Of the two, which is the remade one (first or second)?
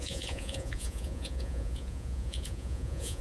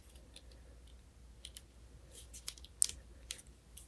first